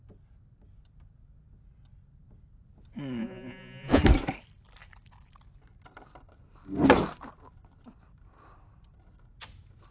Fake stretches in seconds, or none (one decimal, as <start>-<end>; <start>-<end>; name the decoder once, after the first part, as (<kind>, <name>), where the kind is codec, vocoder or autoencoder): 3.2-4.0 (vocoder, Vocos)

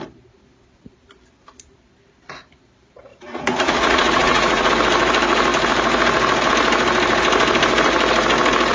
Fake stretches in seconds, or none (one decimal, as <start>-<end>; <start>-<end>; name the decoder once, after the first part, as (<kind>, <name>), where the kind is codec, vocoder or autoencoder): 3.1-4.7 (vocoder, Vocos)

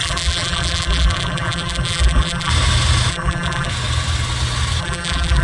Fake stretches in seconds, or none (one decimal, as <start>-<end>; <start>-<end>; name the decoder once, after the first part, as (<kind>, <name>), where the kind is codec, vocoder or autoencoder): 0.0-2.5 (vocoder, BigVGAN v2); 3.1-3.7; 4.8-5.4